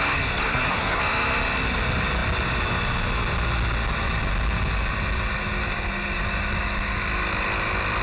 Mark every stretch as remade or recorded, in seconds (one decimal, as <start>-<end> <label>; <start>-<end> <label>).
0.0-0.5 recorded; 0.5-1.0 remade; 1.0-8.0 recorded